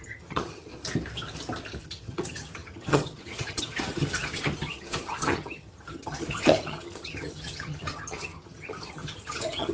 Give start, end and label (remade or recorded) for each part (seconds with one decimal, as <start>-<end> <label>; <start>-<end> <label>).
0.0-0.7 remade; 0.7-1.8 recorded; 1.8-9.7 remade